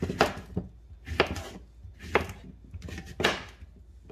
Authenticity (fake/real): real